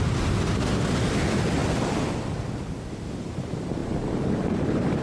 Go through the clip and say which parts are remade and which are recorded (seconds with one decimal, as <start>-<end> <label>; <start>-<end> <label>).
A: 0.0-5.0 recorded